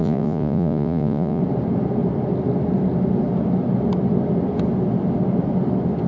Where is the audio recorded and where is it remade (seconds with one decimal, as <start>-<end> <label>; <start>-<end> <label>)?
0.0-1.4 remade; 1.4-6.1 recorded